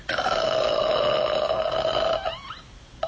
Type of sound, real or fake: real